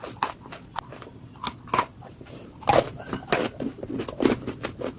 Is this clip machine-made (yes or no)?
no